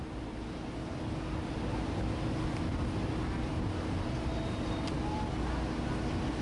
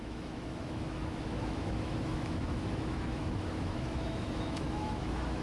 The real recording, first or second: first